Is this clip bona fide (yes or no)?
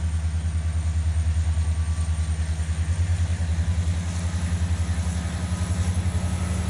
yes